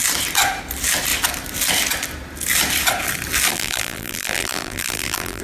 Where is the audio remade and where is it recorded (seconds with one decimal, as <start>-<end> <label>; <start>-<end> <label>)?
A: 0.0-3.5 recorded; 3.5-5.4 remade